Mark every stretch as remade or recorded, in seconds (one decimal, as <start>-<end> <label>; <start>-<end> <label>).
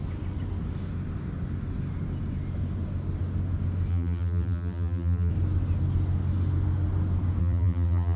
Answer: 0.0-3.9 recorded; 3.9-5.3 remade; 5.3-7.4 recorded; 7.4-8.2 remade